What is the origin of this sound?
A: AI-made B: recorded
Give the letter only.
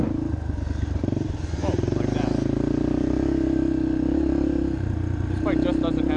B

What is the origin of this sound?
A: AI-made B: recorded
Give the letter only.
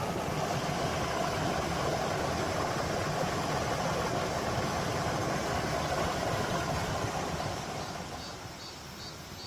B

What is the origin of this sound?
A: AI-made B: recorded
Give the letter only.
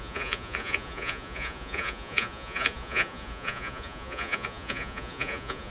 A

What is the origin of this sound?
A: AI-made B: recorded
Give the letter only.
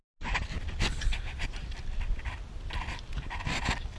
B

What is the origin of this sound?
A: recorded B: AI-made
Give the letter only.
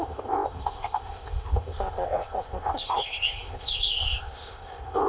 B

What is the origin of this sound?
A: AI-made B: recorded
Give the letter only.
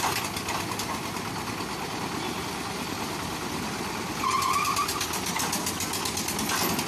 B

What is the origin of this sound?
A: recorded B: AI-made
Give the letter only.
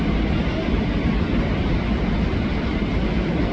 A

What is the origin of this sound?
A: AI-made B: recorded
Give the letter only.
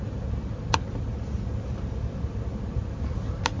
B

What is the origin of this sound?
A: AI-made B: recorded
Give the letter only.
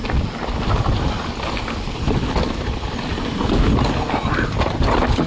B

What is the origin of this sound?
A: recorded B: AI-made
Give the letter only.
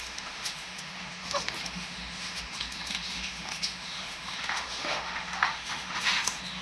B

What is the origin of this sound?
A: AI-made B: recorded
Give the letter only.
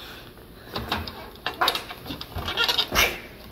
B